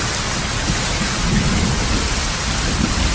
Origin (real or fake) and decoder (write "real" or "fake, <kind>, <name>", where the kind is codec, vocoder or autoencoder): real